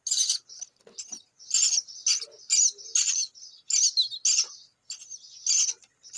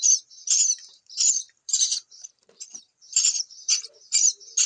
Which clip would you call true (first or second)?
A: first